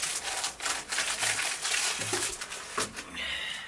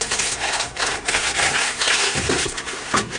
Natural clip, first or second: first